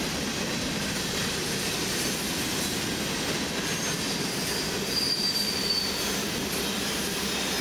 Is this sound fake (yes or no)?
no